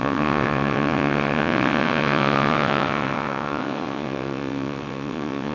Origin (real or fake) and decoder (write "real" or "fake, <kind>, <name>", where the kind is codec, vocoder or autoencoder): fake, vocoder, WaveNeXt